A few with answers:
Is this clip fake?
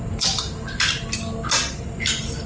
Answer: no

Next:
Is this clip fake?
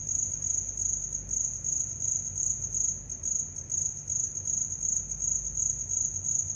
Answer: no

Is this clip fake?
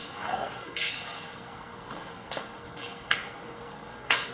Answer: yes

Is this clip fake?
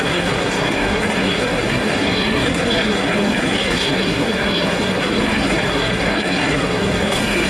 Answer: yes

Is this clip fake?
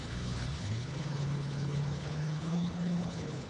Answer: yes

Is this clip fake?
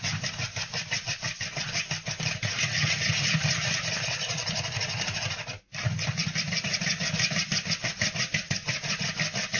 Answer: no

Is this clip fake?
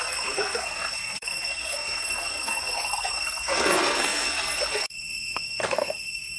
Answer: yes